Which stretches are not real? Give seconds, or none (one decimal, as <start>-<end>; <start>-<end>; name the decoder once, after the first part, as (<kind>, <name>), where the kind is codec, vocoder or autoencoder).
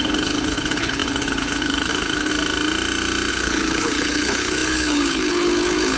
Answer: 0.0-2.3 (codec, HILCodec); 3.3-6.0